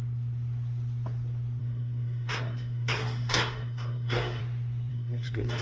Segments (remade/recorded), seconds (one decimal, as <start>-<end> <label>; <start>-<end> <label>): 0.0-1.6 recorded; 1.6-4.4 remade; 4.4-4.9 recorded; 4.9-5.6 remade